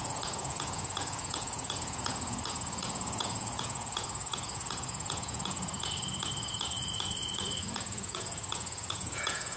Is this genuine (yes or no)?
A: no